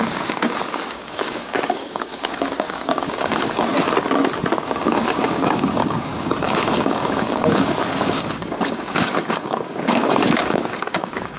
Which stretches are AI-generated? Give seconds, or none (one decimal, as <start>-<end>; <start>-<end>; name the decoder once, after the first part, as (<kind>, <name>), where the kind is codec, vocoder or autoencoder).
0.0-3.7 (codec, DAC); 4.6-11.4